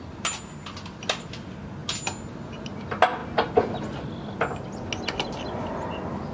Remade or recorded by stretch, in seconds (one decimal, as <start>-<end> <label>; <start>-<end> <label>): 0.0-6.3 recorded